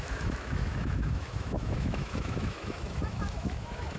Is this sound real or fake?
fake